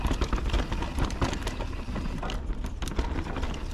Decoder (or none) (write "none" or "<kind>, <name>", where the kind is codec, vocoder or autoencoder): none